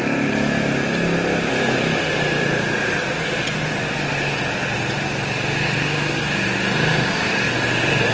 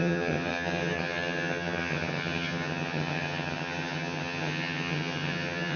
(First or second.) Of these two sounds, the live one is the first